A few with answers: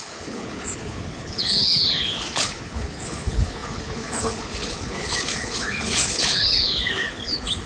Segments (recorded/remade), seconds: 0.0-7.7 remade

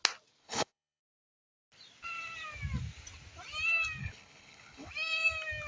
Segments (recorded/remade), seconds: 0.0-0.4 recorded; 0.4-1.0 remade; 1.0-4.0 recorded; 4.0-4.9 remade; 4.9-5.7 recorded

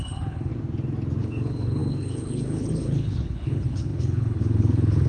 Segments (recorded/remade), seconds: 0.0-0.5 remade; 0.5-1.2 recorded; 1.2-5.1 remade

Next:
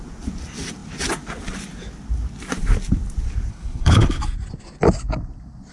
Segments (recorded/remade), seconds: 0.0-3.5 recorded; 3.5-4.2 remade; 4.2-5.7 recorded

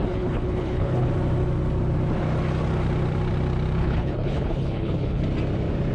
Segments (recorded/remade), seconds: 0.0-1.1 remade; 1.1-3.8 recorded; 3.8-5.2 remade; 5.2-5.9 recorded

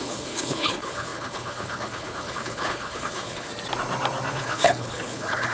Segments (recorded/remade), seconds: 0.0-3.5 remade; 3.5-4.3 recorded; 4.3-5.5 remade

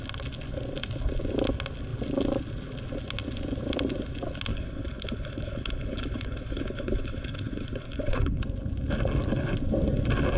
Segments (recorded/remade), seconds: 0.0-4.5 recorded; 4.5-8.4 remade; 8.4-10.4 recorded